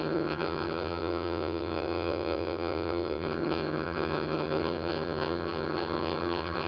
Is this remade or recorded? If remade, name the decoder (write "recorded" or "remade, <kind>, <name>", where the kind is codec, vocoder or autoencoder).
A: remade, vocoder, HiFi-GAN